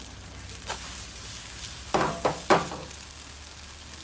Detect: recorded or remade recorded